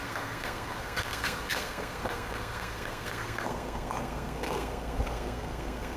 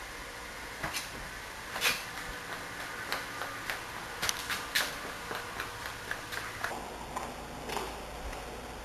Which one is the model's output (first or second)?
first